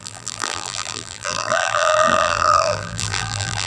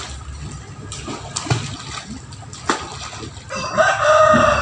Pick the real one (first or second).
second